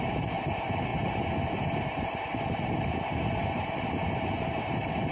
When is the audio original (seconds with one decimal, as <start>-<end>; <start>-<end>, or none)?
0.0-5.1